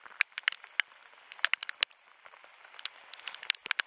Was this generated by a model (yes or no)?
no